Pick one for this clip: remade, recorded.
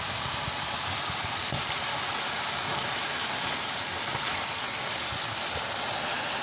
recorded